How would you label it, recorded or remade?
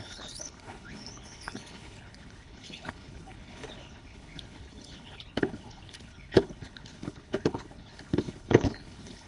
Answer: remade